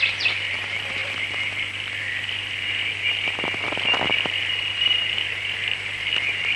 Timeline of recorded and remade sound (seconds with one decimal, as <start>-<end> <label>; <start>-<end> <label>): 0.0-1.0 remade; 1.0-2.0 recorded; 2.0-6.6 remade